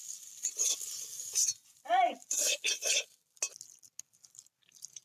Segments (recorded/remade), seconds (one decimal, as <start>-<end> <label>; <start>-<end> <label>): 0.0-2.5 remade; 2.5-5.0 recorded